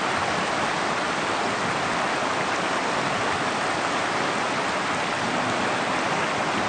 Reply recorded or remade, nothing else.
recorded